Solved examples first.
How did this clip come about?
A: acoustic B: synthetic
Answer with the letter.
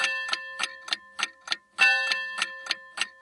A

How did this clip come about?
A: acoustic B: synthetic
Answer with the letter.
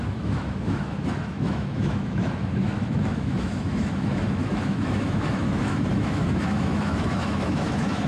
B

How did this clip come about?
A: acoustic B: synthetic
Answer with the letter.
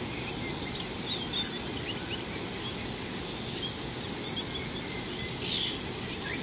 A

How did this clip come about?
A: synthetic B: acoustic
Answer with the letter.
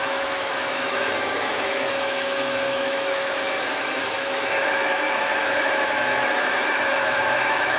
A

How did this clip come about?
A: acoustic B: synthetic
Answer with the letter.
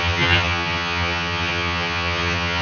B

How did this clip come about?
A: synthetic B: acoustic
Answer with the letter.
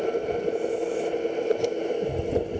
B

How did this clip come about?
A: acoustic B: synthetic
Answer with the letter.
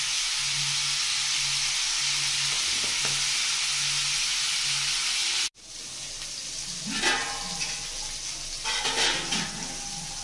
A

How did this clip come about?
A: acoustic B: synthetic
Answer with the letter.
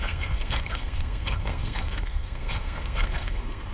B